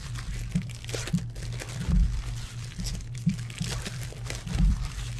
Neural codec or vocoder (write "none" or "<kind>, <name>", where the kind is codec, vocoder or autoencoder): vocoder, BigVGAN v2